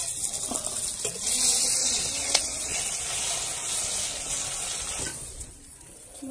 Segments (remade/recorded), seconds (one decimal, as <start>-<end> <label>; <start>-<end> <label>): 0.0-1.8 recorded; 1.8-2.8 remade; 2.8-5.1 recorded; 5.1-6.3 remade